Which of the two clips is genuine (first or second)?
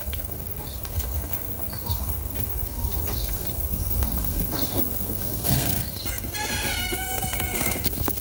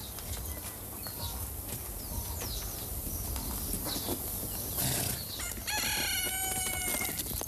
second